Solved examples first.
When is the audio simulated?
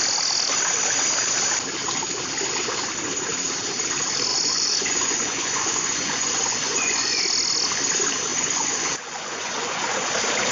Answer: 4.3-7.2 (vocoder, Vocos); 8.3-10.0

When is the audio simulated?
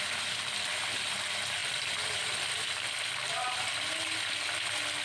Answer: none